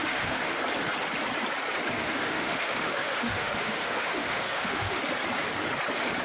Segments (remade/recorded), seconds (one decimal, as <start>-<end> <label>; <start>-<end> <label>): 0.0-0.6 remade; 0.6-2.0 recorded; 2.0-5.0 remade; 5.0-6.2 recorded